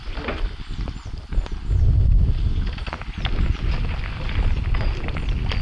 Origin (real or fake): real